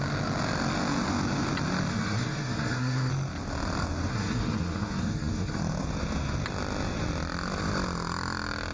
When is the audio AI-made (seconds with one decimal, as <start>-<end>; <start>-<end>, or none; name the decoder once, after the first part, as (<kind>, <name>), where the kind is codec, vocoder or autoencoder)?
1.9-3.1 (codec, SNAC); 4.1-5.6